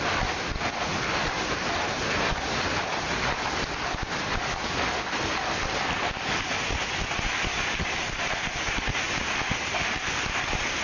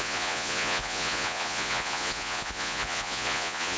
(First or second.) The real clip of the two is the first